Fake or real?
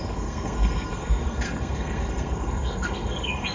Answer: fake